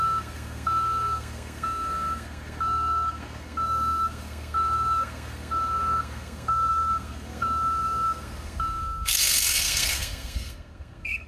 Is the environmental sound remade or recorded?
remade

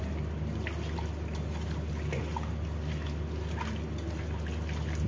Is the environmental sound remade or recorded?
recorded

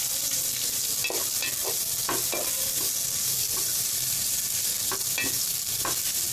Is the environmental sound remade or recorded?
recorded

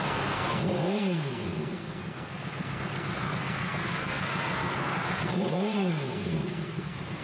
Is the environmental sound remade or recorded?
remade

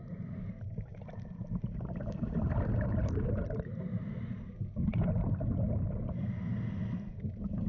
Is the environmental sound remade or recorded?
recorded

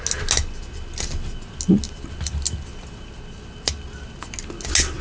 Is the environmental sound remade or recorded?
recorded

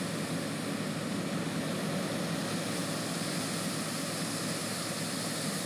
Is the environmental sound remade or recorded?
recorded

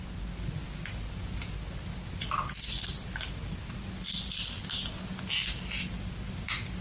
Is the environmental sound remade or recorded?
recorded